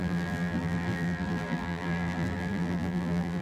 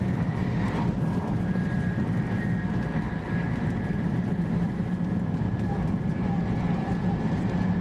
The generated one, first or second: first